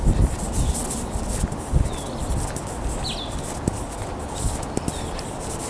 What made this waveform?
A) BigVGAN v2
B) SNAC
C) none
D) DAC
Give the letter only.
C